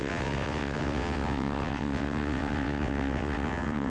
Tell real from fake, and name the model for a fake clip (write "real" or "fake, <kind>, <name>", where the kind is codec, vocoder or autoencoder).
fake, vocoder, WaveNeXt